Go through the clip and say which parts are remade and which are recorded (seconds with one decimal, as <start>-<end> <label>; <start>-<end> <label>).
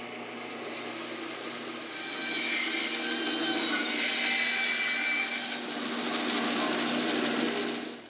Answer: 0.0-8.1 recorded